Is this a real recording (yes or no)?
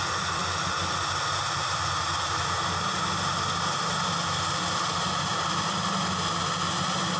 yes